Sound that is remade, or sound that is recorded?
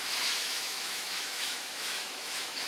remade